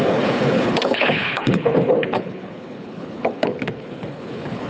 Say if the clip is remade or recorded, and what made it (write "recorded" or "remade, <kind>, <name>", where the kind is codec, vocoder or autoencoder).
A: remade, codec, HILCodec